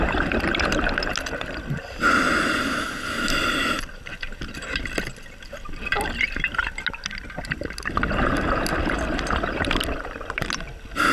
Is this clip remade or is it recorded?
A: recorded